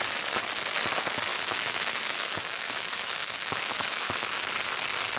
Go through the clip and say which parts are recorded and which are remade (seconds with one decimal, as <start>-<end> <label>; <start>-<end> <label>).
0.0-1.3 recorded; 1.3-4.4 remade; 4.4-5.2 recorded